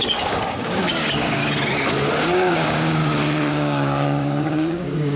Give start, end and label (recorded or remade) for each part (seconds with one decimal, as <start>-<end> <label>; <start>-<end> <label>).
0.0-1.4 remade; 1.4-2.2 recorded; 2.2-3.0 remade; 3.0-3.5 recorded; 3.5-5.2 remade